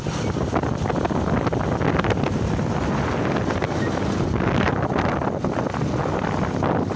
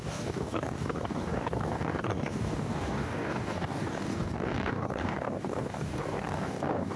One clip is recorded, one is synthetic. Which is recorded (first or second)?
first